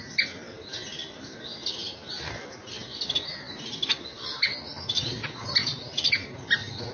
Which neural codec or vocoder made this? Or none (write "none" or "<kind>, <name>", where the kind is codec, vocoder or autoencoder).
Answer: none